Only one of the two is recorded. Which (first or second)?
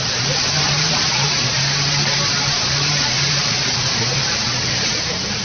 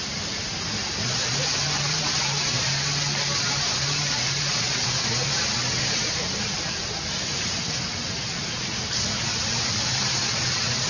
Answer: second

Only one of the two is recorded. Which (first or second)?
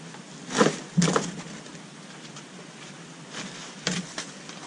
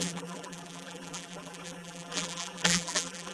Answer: first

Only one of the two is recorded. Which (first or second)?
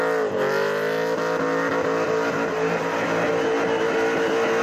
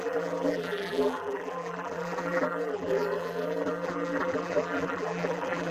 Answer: first